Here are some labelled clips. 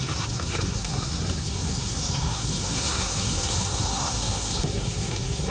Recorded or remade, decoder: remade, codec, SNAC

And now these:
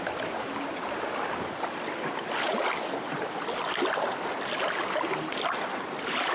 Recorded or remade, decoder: recorded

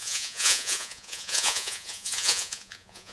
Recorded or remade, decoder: remade, vocoder, Vocos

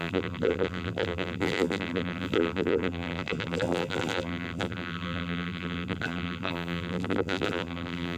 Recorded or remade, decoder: remade, vocoder, BigVGAN v2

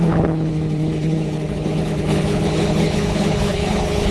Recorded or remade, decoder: remade, codec, HILCodec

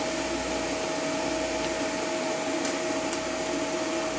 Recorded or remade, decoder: recorded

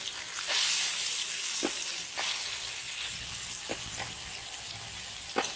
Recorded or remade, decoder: recorded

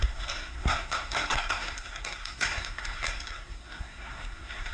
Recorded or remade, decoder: remade, codec, SNAC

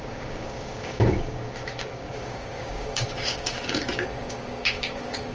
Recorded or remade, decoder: remade, codec, DAC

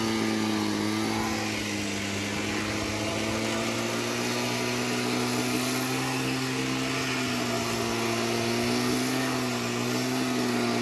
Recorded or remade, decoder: recorded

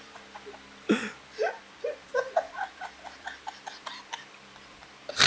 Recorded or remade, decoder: remade, vocoder, BigVGAN v2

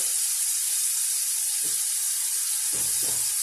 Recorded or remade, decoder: remade, vocoder, BigVGAN v2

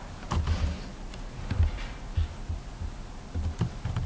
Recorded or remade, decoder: recorded